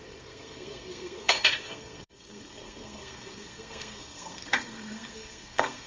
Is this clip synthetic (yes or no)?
yes